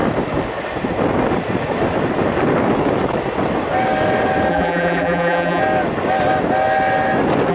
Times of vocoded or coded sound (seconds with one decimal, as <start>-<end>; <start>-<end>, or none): 4.5-5.6